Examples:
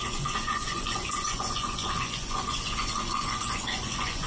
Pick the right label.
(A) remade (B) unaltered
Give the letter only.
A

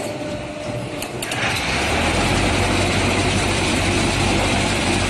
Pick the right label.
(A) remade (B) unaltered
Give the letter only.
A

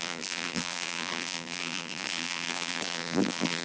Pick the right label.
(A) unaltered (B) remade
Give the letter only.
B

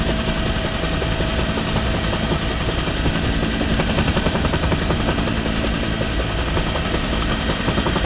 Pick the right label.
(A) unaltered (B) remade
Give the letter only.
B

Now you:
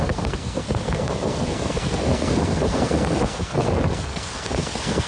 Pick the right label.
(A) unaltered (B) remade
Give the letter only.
B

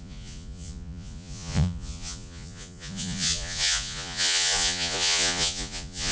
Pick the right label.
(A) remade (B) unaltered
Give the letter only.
A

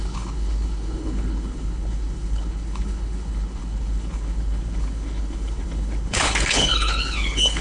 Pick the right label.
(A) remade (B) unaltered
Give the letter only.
A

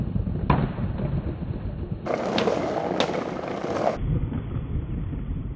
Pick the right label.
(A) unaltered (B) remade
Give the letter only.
A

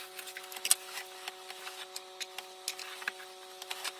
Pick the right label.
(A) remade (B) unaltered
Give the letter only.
B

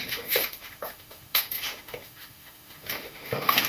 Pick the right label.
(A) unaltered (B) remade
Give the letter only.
B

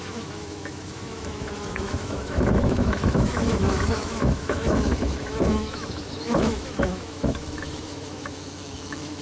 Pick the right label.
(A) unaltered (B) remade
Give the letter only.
B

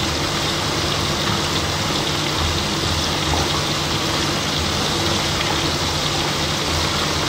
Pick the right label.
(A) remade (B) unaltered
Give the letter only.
B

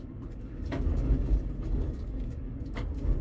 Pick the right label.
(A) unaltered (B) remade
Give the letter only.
B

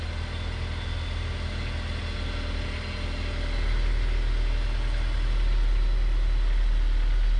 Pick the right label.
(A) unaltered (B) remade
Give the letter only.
A